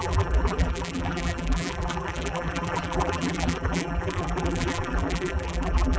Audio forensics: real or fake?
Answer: fake